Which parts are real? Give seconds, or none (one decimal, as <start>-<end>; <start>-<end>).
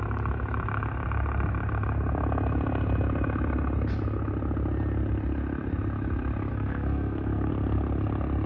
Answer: 0.0-6.5; 7.5-8.5